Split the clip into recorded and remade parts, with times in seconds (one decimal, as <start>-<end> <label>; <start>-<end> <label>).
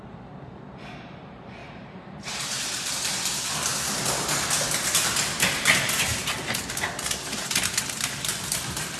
0.0-1.6 recorded; 1.6-2.9 remade; 2.9-9.0 recorded